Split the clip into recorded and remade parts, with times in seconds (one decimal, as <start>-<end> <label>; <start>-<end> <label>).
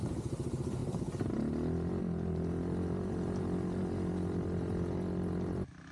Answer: 0.0-5.9 recorded